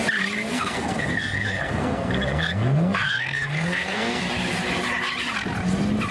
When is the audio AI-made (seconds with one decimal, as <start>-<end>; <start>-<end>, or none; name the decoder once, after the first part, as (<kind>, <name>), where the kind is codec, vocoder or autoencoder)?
0.5-4.2 (codec, SNAC)